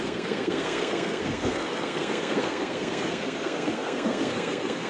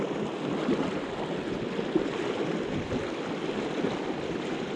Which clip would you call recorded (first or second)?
second